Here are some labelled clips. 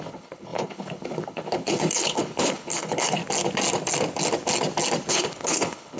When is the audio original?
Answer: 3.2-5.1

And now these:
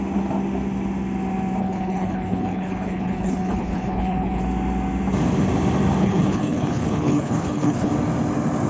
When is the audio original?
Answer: 0.0-1.6; 4.4-6.0; 7.9-8.7

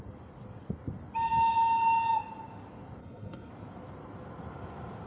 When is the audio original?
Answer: 0.0-3.0; 3.5-5.1